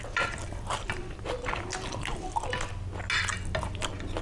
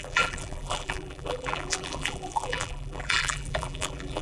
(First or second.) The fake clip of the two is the second